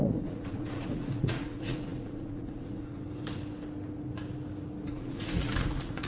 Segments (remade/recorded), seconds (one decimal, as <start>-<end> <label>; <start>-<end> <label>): 0.0-3.0 remade; 3.0-4.9 recorded; 4.9-6.1 remade